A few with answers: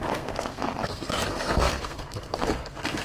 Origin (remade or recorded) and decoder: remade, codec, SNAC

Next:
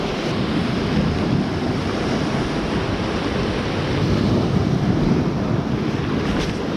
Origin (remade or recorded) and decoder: recorded